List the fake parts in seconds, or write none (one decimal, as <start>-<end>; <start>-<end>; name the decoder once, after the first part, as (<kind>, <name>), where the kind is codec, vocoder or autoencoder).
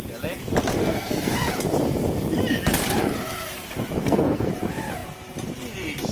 0.8-1.5 (codec, SNAC); 4.0-4.5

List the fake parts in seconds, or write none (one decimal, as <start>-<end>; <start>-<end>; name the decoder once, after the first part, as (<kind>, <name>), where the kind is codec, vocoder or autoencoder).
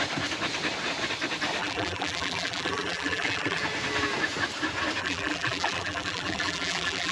1.6-3.6 (vocoder, BigVGAN v2); 5.0-7.1